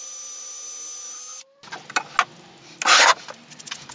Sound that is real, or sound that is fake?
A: real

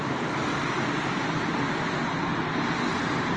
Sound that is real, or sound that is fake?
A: real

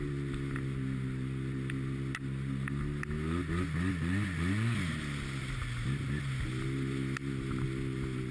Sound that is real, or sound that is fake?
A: real